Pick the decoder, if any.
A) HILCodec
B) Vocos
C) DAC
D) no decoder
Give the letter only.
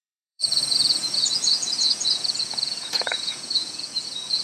B